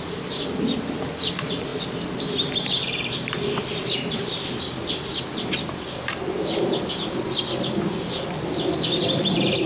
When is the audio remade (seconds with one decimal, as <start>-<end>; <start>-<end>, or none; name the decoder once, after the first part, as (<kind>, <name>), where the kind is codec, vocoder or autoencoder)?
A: 0.0-1.7 (vocoder, BigVGAN v2); 4.1-9.7

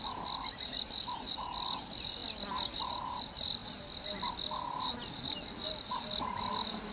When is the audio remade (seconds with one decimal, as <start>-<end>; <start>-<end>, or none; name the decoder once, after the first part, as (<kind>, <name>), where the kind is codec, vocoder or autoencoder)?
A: none

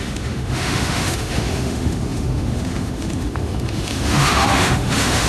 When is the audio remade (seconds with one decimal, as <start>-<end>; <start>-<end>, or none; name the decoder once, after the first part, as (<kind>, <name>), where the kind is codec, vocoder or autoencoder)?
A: 0.0-5.3 (autoencoder, DAC-VAE)

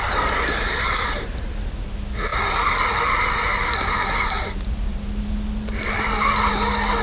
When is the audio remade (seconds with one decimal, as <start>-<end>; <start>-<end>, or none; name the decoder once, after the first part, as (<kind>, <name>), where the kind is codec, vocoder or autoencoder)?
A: none